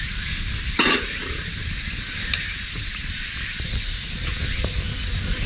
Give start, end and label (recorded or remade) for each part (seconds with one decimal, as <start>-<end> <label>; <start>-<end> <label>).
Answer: 0.0-5.5 recorded